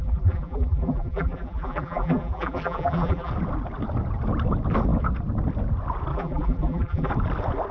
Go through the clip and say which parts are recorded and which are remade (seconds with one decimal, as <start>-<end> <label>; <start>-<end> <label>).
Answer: 0.0-3.3 remade; 3.3-6.1 recorded; 6.1-7.1 remade; 7.1-7.7 recorded